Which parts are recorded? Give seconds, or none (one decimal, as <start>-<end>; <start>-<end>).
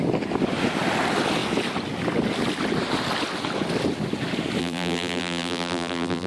0.0-4.6